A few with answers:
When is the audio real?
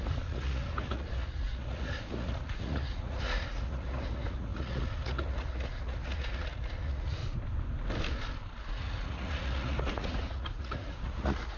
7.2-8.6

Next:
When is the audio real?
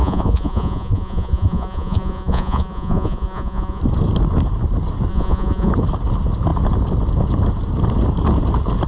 3.8-5.1; 5.7-8.9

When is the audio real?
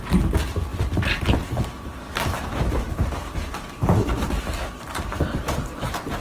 0.0-2.4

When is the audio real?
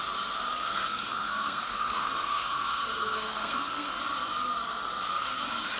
0.0-0.5; 4.0-5.8